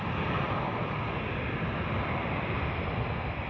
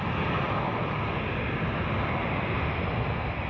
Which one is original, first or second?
second